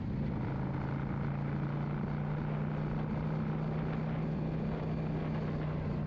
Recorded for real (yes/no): yes